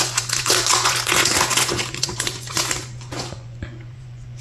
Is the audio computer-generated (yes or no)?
yes